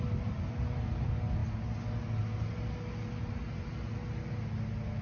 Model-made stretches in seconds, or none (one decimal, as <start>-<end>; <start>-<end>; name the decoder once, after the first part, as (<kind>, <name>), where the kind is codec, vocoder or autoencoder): none